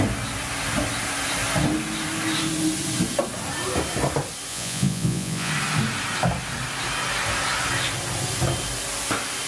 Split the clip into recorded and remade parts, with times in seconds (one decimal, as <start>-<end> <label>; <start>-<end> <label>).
0.0-4.5 recorded; 4.5-5.5 remade; 5.5-9.5 recorded